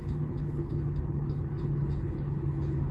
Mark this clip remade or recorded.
remade